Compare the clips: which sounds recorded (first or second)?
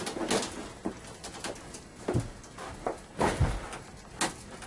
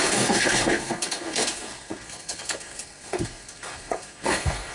first